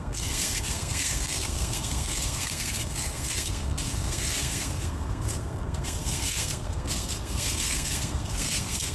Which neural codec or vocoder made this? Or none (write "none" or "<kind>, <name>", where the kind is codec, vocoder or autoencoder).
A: codec, SNAC